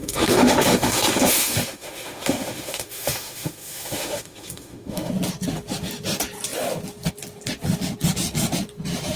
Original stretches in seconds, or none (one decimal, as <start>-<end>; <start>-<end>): 5.1-9.2